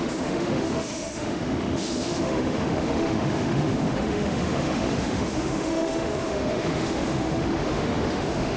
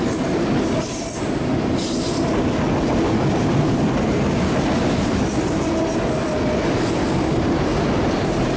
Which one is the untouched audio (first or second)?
second